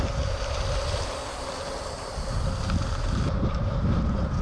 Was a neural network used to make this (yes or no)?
no